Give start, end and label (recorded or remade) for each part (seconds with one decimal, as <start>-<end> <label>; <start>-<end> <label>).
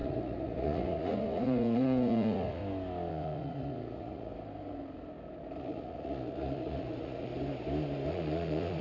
0.0-2.6 remade; 2.6-3.1 recorded; 3.1-4.3 remade; 4.3-5.6 recorded; 5.6-7.3 remade; 7.3-8.1 recorded; 8.1-8.8 remade